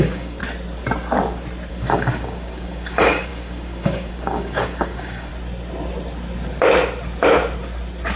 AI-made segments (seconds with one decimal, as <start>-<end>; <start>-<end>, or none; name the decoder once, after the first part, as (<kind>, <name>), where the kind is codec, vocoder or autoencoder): 0.0-0.4 (codec, DAC); 1.7-5.3